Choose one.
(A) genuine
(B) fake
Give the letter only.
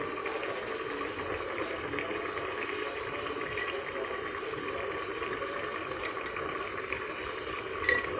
A